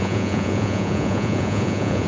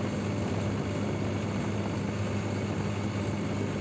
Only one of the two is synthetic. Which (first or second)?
first